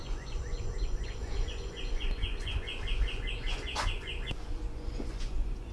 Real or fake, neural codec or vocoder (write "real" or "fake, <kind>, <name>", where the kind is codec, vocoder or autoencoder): fake, vocoder, Vocos